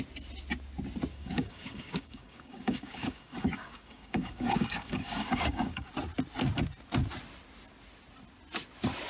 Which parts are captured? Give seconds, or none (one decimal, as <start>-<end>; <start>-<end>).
0.0-1.1; 5.9-9.1